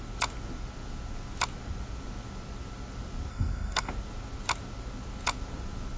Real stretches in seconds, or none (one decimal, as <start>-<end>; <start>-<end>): 0.0-3.3; 3.9-6.0